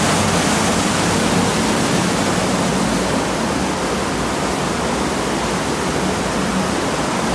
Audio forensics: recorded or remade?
recorded